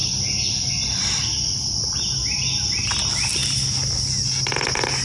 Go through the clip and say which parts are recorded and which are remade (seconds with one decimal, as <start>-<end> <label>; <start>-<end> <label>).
0.0-5.0 recorded